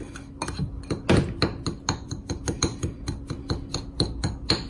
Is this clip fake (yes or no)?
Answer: no